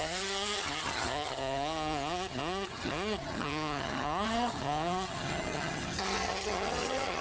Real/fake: fake